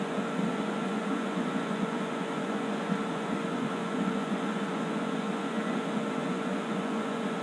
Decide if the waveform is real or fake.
fake